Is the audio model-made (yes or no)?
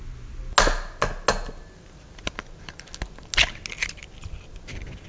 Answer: no